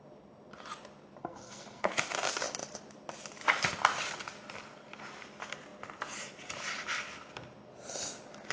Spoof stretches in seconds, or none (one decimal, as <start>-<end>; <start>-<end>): 1.2-1.9